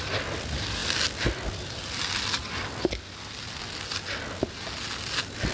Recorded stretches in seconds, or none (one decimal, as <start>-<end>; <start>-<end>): 0.0-5.5